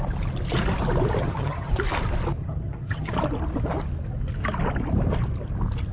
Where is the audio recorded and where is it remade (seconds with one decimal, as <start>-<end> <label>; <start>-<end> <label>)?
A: 0.0-1.2 recorded; 1.2-1.7 remade; 1.7-2.4 recorded; 2.4-3.1 remade; 3.1-5.9 recorded